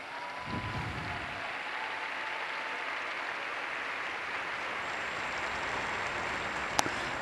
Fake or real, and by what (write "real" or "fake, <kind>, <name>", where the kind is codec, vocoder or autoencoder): real